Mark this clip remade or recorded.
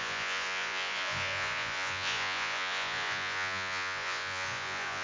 remade